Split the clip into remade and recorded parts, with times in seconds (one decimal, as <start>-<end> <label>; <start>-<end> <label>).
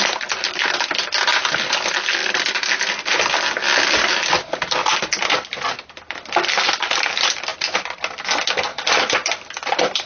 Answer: 0.0-7.5 recorded; 7.5-8.1 remade; 8.1-8.7 recorded; 8.7-10.1 remade